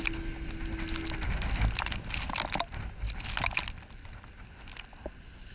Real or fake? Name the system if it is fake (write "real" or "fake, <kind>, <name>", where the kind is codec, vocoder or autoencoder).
real